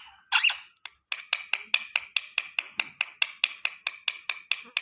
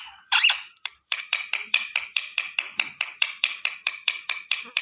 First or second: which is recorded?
first